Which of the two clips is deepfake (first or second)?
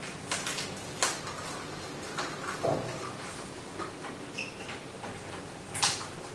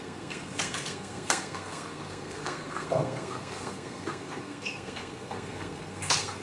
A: second